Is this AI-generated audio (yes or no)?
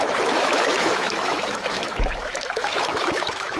yes